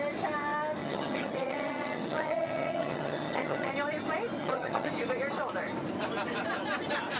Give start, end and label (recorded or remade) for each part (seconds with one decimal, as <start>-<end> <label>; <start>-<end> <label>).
0.0-0.8 recorded; 0.8-3.7 remade; 3.7-4.4 recorded; 4.4-4.9 remade; 4.9-7.2 recorded